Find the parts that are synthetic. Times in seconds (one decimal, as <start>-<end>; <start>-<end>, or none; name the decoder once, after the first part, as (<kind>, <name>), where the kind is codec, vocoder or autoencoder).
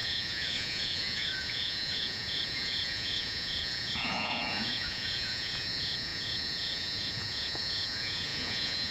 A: 0.0-8.9 (vocoder, Vocos)